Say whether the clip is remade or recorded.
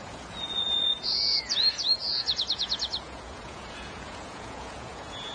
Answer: remade